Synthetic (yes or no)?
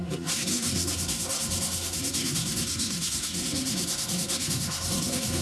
yes